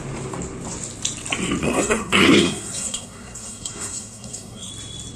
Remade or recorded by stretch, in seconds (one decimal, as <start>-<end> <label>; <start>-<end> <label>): 0.0-1.6 recorded; 1.6-4.7 remade; 4.7-5.2 recorded